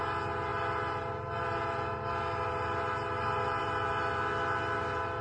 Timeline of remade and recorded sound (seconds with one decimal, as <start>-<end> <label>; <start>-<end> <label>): 0.0-5.2 recorded